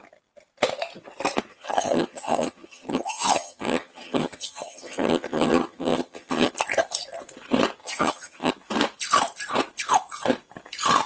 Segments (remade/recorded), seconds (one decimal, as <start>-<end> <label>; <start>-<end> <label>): 0.0-1.5 recorded; 1.5-6.5 remade; 6.5-7.8 recorded; 7.8-8.5 remade; 8.5-11.1 recorded